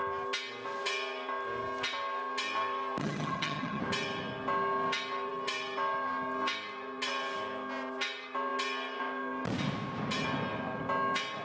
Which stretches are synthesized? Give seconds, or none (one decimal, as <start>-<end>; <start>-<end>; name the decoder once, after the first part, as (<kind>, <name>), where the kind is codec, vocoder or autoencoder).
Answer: 3.0-3.8 (vocoder, HiFi-GAN)